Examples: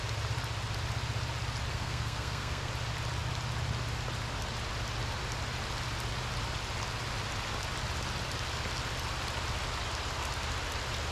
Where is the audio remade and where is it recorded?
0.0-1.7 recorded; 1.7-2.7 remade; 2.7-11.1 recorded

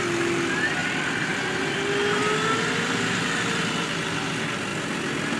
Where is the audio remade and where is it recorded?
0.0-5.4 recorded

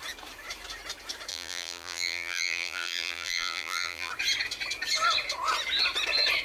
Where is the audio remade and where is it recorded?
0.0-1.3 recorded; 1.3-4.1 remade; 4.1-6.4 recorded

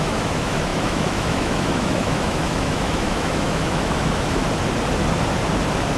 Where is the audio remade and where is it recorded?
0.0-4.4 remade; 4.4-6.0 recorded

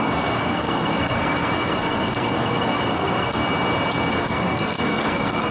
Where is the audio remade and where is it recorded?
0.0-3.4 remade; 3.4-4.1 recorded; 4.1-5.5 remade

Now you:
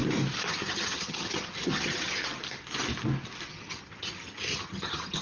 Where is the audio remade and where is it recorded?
0.0-0.5 recorded; 0.5-2.2 remade; 2.2-3.5 recorded; 3.5-5.2 remade

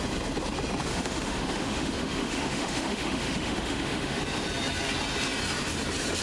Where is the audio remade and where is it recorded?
0.0-0.9 recorded; 0.9-4.2 remade; 4.2-6.2 recorded